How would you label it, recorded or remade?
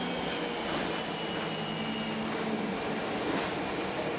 recorded